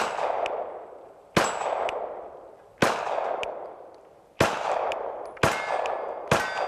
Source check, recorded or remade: recorded